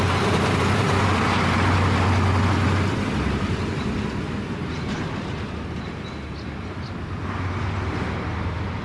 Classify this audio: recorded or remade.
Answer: recorded